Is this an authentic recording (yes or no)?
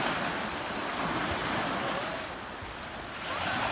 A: yes